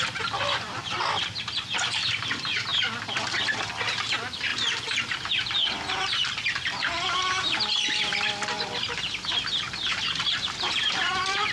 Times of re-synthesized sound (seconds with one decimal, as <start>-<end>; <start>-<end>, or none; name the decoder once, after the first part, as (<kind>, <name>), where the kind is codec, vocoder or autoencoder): 0.0-8.1 (vocoder, BigVGAN v2); 10.0-11.5

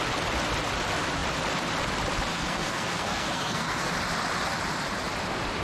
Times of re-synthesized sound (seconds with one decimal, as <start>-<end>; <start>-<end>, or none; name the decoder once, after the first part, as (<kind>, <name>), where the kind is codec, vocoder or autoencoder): 2.3-3.9 (codec, SNAC)

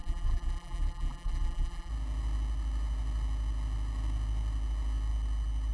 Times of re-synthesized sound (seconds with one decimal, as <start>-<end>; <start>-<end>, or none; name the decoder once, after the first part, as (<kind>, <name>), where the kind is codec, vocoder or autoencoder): 0.0-1.9 (vocoder, BigVGAN v2)